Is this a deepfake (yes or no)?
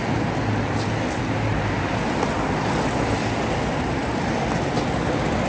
no